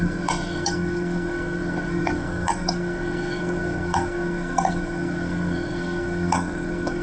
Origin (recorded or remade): remade